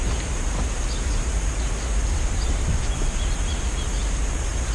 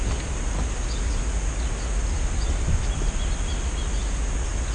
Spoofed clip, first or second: first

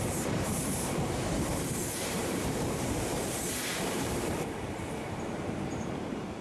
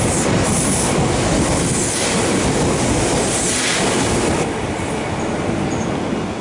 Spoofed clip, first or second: first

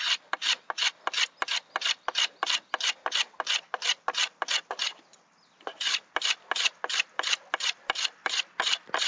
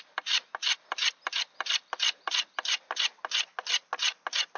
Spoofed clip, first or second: first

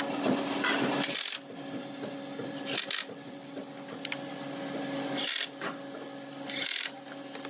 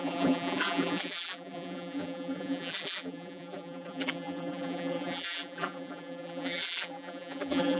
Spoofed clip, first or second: second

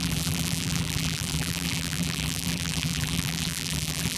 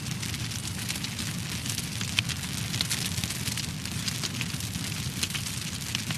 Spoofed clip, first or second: first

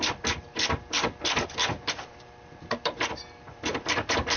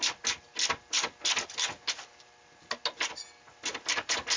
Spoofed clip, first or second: first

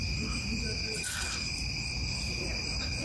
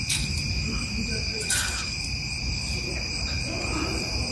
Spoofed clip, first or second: second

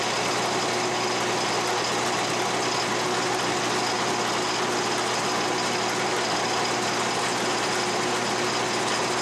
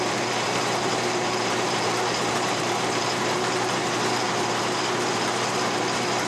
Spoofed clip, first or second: second